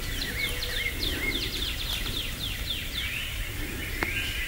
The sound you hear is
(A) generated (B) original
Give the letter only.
B